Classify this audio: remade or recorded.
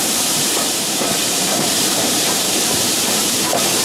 remade